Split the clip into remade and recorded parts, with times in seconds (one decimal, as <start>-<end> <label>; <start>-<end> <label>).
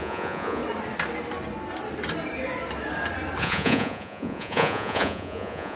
0.0-0.6 remade; 0.6-3.4 recorded; 3.4-5.8 remade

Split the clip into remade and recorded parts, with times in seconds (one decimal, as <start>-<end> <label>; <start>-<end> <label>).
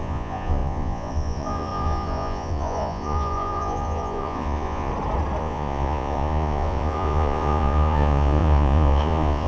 0.0-4.9 remade; 4.9-5.4 recorded; 5.4-9.5 remade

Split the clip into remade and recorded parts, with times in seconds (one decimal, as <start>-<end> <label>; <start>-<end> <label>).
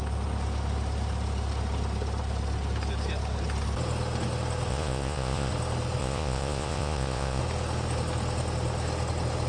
0.0-4.7 recorded; 4.7-5.5 remade; 5.5-6.0 recorded; 6.0-7.4 remade; 7.4-9.5 recorded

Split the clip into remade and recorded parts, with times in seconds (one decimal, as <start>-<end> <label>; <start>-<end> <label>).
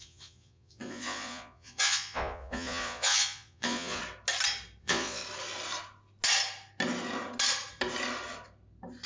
0.0-4.0 remade; 4.0-4.8 recorded; 4.8-5.2 remade; 5.2-9.1 recorded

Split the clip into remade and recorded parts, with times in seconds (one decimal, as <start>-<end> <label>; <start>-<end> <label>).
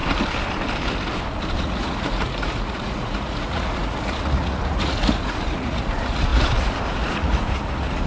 0.0-1.6 recorded; 1.6-8.1 remade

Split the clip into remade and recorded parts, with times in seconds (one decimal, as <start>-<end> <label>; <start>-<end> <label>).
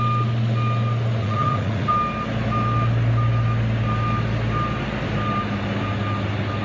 0.0-1.2 recorded; 1.2-1.9 remade; 1.9-6.6 recorded